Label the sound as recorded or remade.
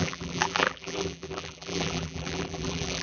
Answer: remade